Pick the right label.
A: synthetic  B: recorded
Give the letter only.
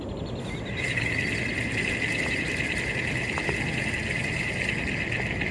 B